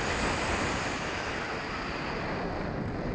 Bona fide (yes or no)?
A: yes